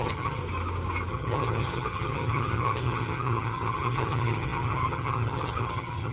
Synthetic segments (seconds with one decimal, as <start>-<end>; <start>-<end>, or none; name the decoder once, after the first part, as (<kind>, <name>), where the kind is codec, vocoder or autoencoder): 0.0-0.4 (vocoder, HiFi-GAN); 1.1-6.1